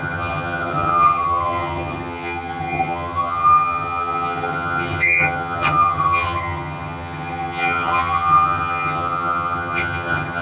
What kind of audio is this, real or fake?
fake